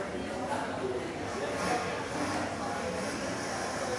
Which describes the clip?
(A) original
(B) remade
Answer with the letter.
A